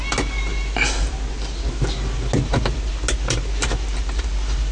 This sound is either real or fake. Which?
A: real